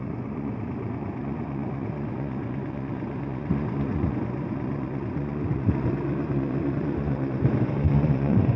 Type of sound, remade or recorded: remade